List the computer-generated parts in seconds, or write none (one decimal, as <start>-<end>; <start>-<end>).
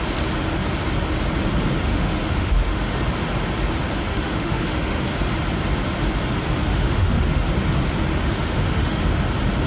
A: 1.9-3.0; 4.1-5.0; 6.7-7.5; 8.1-9.0